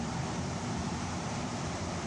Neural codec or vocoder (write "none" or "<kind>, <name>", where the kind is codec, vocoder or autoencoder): vocoder, BigVGAN v2